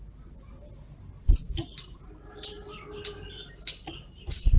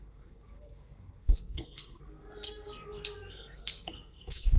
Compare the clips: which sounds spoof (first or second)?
second